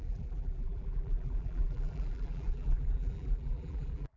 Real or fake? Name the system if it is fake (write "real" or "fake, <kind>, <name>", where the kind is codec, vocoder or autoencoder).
fake, vocoder, BigVGAN v2